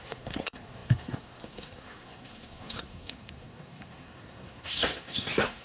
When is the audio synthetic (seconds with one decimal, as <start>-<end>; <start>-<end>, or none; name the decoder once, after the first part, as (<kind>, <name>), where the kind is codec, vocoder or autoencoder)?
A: 0.0-5.6 (codec, SNAC)